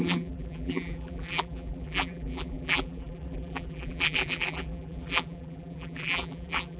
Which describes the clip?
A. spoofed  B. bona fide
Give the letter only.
A